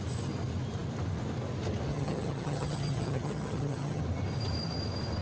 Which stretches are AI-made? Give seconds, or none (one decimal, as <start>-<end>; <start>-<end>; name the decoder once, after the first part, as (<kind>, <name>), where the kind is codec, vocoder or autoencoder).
1.9-4.0 (vocoder, HiFi-GAN)